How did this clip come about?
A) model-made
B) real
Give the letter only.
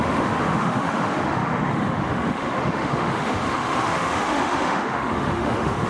A